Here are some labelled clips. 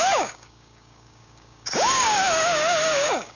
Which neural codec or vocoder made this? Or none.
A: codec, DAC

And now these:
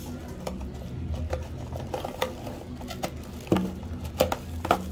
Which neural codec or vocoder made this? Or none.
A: none